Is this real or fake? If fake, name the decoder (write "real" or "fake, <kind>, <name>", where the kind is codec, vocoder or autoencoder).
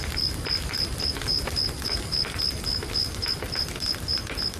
real